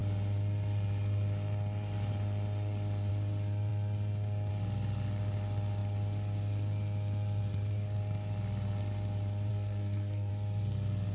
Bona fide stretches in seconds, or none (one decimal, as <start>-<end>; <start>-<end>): 0.0-9.5; 10.3-11.1